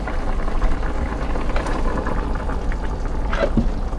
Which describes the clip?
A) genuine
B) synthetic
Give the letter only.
A